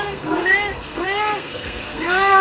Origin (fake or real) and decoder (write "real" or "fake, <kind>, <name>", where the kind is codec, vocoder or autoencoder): fake, codec, SNAC